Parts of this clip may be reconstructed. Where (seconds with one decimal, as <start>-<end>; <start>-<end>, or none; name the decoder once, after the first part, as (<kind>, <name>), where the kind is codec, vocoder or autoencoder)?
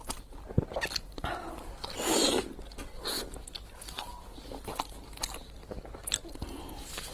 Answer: none